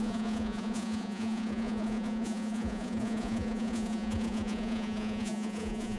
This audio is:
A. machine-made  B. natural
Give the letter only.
A